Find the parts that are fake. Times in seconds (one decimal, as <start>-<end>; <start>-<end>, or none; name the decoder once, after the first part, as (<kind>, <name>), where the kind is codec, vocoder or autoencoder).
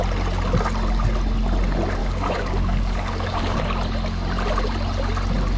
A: 2.0-3.6 (codec, DAC)